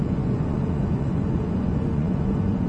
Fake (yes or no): yes